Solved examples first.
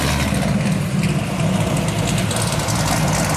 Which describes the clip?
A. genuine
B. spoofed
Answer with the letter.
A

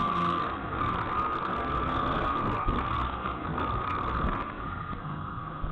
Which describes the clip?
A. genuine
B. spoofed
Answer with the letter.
B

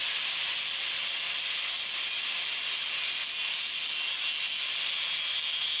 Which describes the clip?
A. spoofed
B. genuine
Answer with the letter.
B